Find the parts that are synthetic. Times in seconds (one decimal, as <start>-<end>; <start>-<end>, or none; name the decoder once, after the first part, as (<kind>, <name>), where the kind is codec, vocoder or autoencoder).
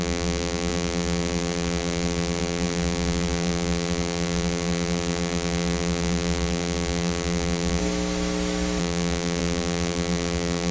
0.0-7.8 (vocoder, BigVGAN v2); 8.8-10.7